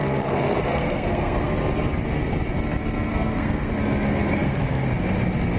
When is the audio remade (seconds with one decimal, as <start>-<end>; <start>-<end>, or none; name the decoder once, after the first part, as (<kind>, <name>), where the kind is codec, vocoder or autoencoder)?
0.0-1.5 (codec, SNAC); 3.1-3.7; 4.3-4.9